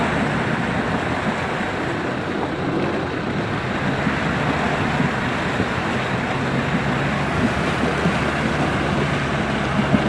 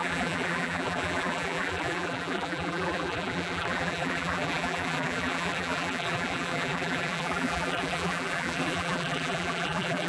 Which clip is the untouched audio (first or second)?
first